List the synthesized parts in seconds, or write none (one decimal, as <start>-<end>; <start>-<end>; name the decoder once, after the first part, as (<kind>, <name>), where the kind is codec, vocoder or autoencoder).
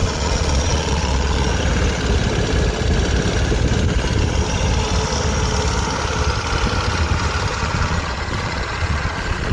0.0-1.5 (vocoder, Vocos); 7.5-9.5